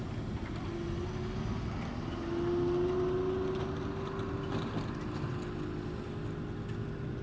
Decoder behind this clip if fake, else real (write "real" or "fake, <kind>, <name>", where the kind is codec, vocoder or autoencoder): real